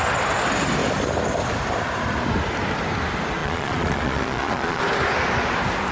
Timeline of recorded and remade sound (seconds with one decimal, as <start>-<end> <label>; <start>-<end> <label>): 0.0-3.4 recorded; 3.4-4.8 remade; 4.8-5.9 recorded